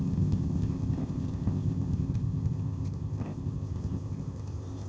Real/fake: fake